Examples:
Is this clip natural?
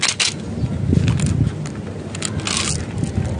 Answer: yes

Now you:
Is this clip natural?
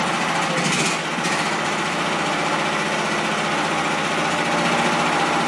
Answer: yes